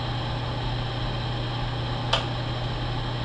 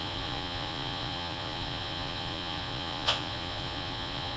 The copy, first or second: second